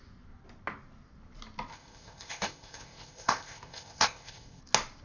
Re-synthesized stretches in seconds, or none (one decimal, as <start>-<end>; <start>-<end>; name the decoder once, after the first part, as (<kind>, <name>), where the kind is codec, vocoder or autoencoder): 1.7-4.6 (codec, ZipCodec)